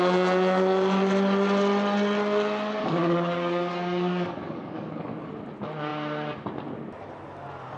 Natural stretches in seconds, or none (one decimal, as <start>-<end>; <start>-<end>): 0.0-2.8; 5.3-7.8